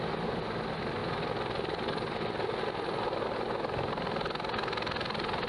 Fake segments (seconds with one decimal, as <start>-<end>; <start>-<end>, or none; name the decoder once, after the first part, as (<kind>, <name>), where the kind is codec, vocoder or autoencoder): none